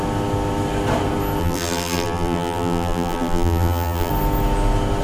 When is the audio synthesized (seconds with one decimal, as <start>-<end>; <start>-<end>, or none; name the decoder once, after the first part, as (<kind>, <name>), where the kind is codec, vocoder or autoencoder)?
1.4-4.1 (vocoder, BigVGAN v2)